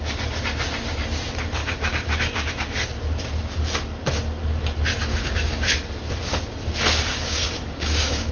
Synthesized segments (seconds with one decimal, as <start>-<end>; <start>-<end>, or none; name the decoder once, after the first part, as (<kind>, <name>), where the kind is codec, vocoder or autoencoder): 1.6-2.5 (codec, DAC); 5.1-5.7; 6.6-8.3